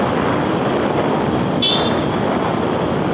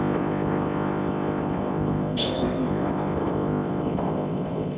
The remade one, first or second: second